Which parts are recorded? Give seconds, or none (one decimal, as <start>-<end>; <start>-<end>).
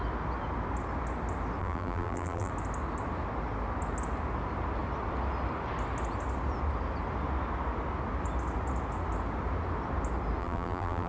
0.0-1.6; 2.5-10.4